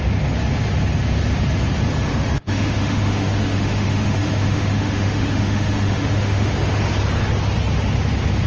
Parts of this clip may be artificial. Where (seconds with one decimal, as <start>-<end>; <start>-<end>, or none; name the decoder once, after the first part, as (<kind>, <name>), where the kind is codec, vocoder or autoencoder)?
2.1-6.9 (autoencoder, DAC-VAE)